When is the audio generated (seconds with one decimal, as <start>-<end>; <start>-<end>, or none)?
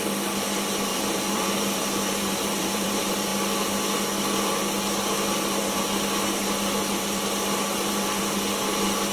0.9-2.9